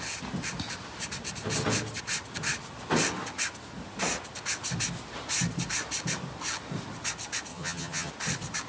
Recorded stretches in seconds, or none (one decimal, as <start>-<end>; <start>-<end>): 0.0-7.5; 8.1-8.7